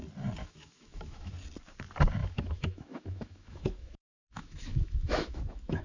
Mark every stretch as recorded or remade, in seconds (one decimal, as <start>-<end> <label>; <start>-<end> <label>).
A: 0.0-0.4 recorded; 0.4-1.3 remade; 1.3-2.2 recorded; 2.2-5.8 remade